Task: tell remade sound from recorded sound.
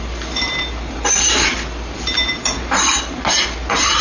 recorded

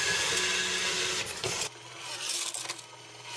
recorded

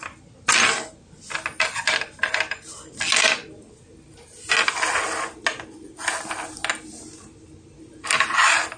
recorded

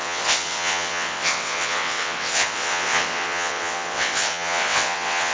remade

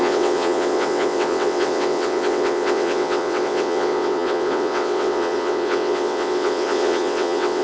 remade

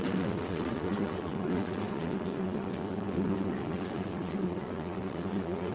remade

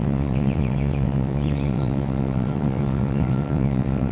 remade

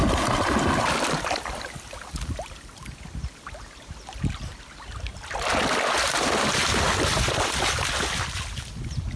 recorded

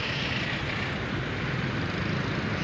recorded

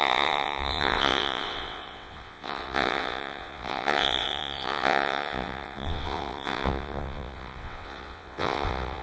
remade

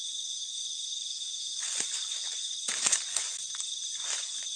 recorded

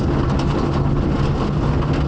recorded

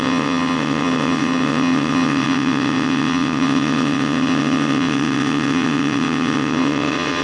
remade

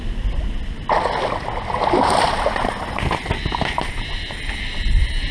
recorded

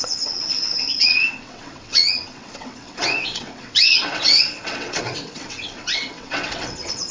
remade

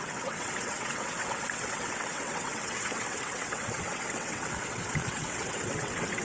remade